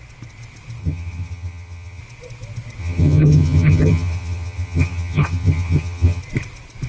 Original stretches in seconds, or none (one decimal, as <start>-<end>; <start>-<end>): 0.0-0.8; 2.0-2.8; 6.2-6.9